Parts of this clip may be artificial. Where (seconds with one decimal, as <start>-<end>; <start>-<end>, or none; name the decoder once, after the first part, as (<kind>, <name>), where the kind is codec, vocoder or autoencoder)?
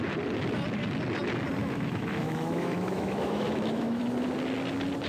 1.6-4.0 (autoencoder, DAC-VAE)